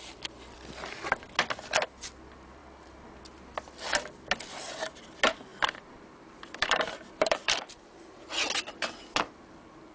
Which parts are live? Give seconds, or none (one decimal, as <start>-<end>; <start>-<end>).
0.0-5.5; 7.7-9.9